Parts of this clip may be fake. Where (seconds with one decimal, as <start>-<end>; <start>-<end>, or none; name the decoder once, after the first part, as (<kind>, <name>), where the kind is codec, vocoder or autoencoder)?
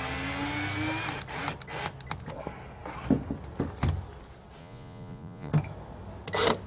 4.6-5.5 (vocoder, Vocos)